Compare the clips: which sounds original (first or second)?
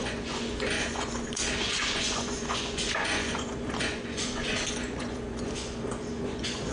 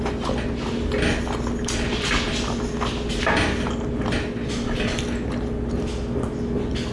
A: second